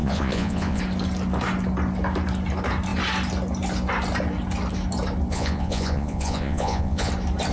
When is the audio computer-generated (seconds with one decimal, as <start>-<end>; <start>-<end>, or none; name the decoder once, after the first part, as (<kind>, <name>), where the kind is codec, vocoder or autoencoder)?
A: 0.0-0.8 (vocoder, Vocos); 5.3-7.1